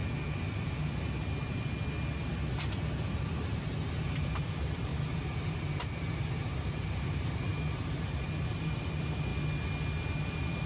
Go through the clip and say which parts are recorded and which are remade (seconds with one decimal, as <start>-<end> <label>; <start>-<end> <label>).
0.0-3.2 recorded; 3.2-4.9 remade; 4.9-6.3 recorded; 6.3-7.5 remade; 7.5-8.6 recorded; 8.6-9.3 remade; 9.3-10.0 recorded; 10.0-10.7 remade